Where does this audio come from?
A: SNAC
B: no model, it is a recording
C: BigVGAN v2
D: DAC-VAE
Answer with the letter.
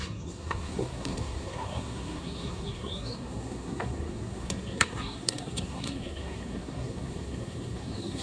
A